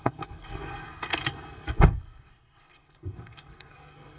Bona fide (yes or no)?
no